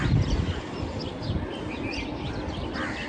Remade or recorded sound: recorded